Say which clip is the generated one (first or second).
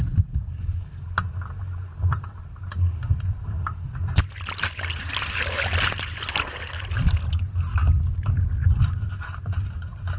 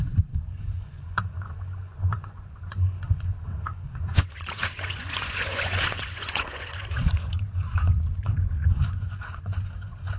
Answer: second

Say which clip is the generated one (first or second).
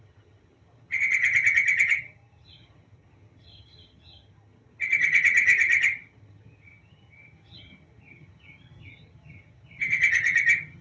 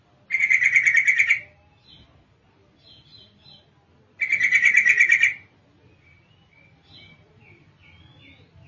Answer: first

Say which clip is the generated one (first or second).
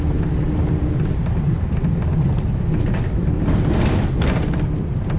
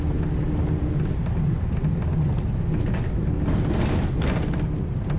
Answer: first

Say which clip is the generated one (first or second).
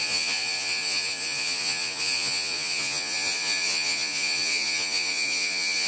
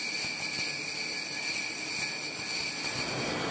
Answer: first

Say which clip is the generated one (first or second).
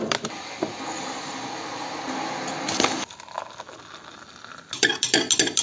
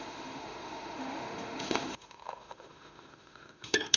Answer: second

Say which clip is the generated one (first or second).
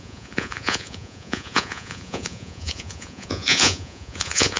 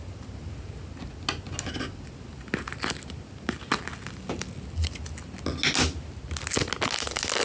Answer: first